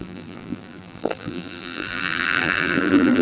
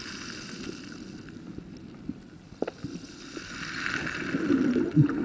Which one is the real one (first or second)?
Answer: second